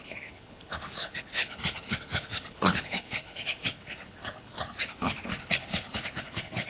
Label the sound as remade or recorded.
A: remade